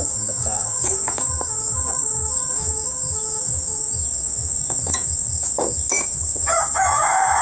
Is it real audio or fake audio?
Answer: fake